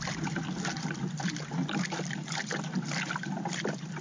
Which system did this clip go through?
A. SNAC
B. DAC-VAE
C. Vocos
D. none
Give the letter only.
D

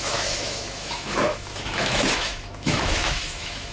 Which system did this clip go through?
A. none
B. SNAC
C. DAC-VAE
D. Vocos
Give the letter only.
C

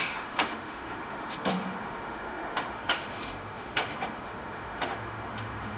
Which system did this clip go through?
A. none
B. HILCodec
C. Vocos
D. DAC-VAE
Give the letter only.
D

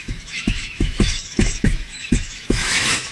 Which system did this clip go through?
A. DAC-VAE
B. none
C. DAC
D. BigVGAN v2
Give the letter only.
A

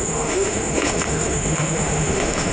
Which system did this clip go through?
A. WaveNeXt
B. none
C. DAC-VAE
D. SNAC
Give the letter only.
C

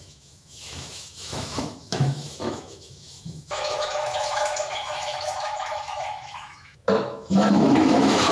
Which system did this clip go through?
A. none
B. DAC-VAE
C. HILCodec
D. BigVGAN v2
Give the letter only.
B